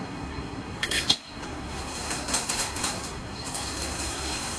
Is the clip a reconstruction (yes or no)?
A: yes